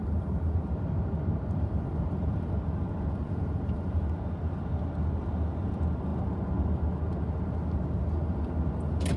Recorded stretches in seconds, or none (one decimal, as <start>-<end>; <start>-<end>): 2.5-3.2; 4.0-9.2